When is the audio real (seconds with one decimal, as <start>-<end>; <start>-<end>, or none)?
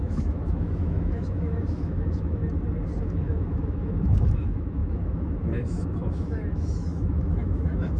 2.4-3.0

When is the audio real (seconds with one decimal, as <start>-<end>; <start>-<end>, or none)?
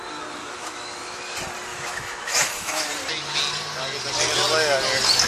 0.0-0.4; 1.2-1.7; 2.9-5.3